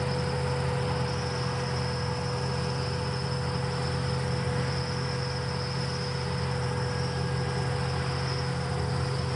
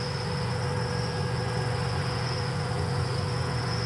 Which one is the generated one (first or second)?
second